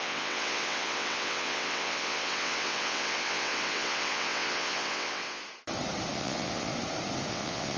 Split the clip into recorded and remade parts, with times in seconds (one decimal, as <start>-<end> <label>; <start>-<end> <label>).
0.0-5.4 remade; 5.4-6.1 recorded; 6.1-6.7 remade; 6.7-7.3 recorded; 7.3-7.8 remade